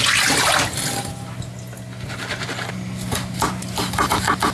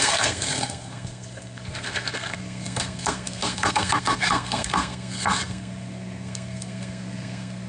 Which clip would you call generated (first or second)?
second